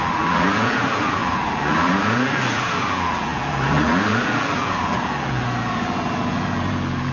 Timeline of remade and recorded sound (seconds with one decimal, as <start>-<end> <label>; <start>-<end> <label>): 0.0-7.1 remade